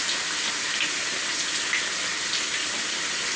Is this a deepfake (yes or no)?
no